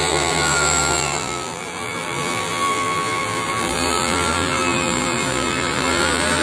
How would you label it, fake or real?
fake